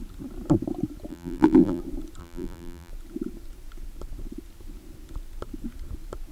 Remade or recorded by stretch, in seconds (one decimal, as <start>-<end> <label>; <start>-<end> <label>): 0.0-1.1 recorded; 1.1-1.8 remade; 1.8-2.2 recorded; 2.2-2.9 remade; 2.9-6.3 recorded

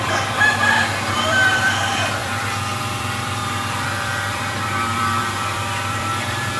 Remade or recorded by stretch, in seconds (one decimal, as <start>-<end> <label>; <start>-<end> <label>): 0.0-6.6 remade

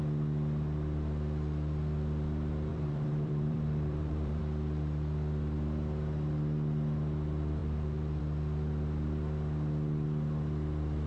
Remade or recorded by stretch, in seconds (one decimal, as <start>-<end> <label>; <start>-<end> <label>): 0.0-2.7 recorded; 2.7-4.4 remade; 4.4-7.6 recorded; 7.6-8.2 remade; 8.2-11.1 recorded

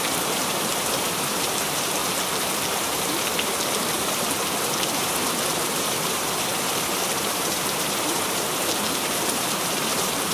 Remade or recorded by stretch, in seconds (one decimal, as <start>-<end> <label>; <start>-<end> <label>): 0.0-2.0 remade; 2.0-2.7 recorded; 2.7-10.3 remade

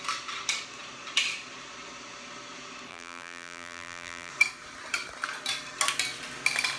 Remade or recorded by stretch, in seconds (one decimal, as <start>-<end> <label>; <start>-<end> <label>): 0.0-2.9 recorded; 2.9-4.3 remade; 4.3-6.8 recorded